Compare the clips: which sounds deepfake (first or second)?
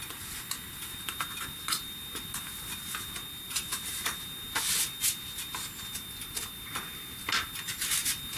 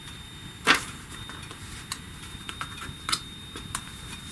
second